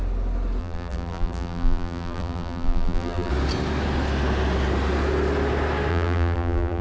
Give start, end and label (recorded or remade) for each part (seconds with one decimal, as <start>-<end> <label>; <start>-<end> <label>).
0.0-0.6 recorded; 0.6-3.3 remade; 3.3-5.9 recorded; 5.9-6.8 remade